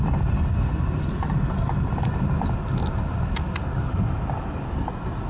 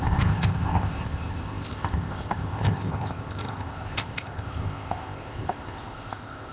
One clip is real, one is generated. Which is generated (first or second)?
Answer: second